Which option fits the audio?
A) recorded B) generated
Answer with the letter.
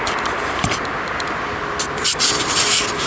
A